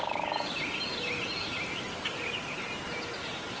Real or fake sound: real